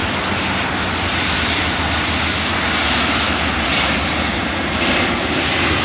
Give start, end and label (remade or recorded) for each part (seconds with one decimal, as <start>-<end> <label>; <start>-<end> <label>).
0.0-5.8 recorded